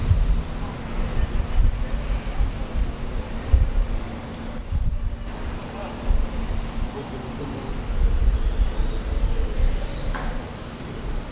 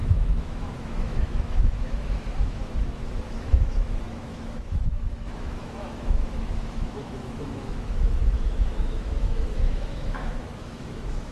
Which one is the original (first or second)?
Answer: first